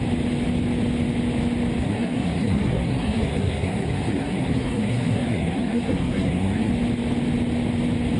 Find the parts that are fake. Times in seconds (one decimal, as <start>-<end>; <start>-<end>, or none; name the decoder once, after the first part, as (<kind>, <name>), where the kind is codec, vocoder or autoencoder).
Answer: 1.8-6.7 (codec, SNAC)